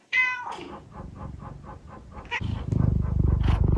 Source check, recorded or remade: recorded